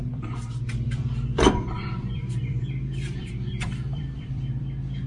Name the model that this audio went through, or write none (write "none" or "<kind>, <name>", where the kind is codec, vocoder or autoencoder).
vocoder, BigVGAN v2